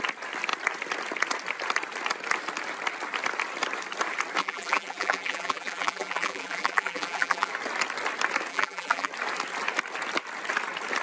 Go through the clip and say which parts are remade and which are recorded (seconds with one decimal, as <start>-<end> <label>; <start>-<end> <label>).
0.0-4.4 recorded; 4.4-7.5 remade; 7.5-8.5 recorded; 8.5-9.1 remade; 9.1-11.0 recorded